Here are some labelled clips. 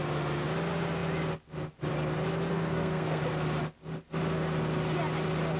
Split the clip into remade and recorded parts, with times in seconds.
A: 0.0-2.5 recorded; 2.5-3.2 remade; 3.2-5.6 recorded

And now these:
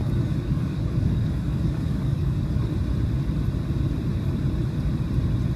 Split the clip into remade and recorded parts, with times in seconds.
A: 0.0-2.7 remade; 2.7-5.6 recorded